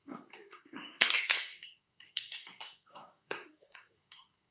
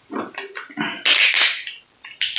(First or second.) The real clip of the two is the second